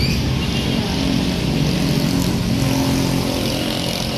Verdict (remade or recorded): recorded